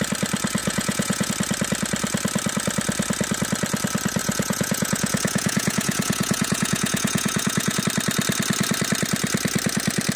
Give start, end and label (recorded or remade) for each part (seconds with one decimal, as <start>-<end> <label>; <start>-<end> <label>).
0.0-0.6 recorded; 0.6-1.3 remade; 1.3-4.2 recorded; 4.2-7.8 remade; 7.8-10.2 recorded